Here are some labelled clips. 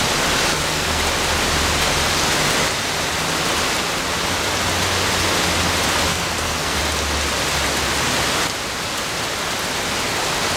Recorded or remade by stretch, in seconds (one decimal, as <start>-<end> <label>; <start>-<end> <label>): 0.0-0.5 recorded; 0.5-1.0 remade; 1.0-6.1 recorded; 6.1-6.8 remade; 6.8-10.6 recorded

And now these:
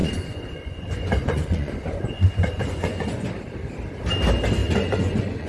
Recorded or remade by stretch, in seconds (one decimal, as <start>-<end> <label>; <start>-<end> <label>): 0.0-3.3 remade; 3.3-4.6 recorded; 4.6-5.5 remade

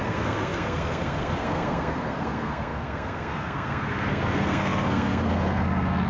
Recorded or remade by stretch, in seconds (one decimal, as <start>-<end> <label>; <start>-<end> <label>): 0.0-6.1 remade

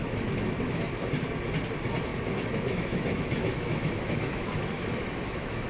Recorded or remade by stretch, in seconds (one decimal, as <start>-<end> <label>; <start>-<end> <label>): 0.0-1.0 remade; 1.0-2.1 recorded; 2.1-5.7 remade

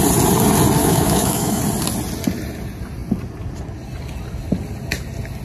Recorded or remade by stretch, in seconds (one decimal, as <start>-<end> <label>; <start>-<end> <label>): 0.0-0.8 recorded; 0.8-1.6 remade; 1.6-5.4 recorded

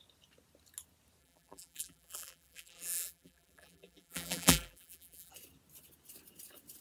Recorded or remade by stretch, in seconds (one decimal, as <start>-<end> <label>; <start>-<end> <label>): 0.0-1.2 recorded; 1.2-5.3 remade; 5.3-6.8 recorded

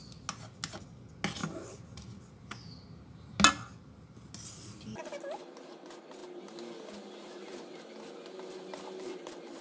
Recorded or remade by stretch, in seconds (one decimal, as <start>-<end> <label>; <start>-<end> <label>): 0.0-9.6 recorded